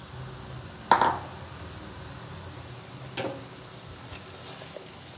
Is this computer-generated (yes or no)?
no